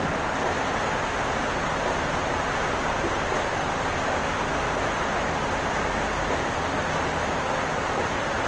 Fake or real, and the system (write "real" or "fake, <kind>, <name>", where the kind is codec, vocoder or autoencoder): real